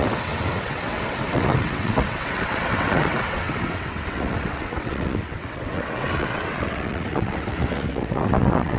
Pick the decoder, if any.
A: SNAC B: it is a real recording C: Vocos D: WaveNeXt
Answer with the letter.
D